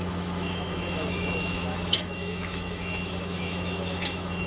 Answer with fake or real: fake